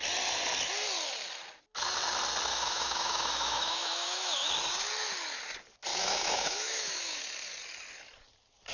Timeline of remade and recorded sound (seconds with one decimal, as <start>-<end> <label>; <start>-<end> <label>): 0.0-2.5 recorded; 2.5-4.5 remade; 4.5-5.9 recorded; 5.9-7.2 remade; 7.2-8.7 recorded